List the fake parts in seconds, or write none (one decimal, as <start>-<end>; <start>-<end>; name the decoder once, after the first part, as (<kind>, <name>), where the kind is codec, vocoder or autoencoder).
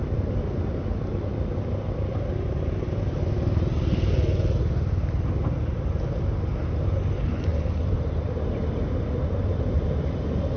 none